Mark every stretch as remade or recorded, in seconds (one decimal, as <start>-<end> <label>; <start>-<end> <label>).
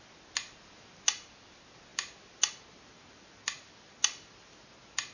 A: 0.0-5.1 recorded